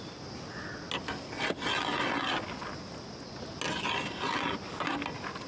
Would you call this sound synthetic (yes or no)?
no